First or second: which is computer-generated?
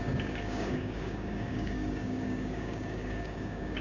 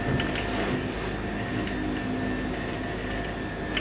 first